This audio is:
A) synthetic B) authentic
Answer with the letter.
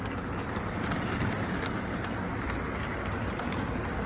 B